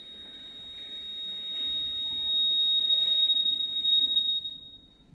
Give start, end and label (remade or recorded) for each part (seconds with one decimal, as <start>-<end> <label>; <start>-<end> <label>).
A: 0.0-2.8 recorded; 2.8-5.1 remade